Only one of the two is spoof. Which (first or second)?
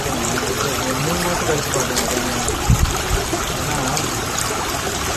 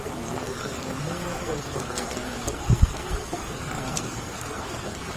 second